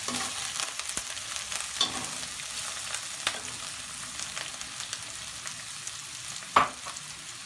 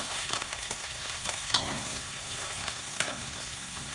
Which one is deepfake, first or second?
second